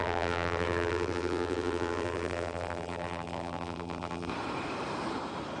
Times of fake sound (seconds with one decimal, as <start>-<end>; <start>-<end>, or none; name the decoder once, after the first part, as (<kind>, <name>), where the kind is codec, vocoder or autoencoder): 0.0-4.3 (vocoder, BigVGAN v2)